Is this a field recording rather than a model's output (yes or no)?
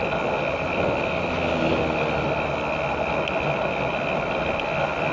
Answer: yes